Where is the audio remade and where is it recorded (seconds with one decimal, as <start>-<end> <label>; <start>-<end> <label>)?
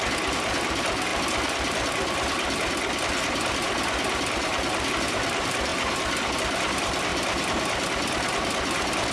0.0-9.1 recorded